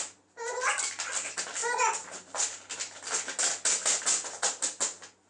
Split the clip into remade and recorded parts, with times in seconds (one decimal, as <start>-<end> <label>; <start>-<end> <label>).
0.0-5.3 recorded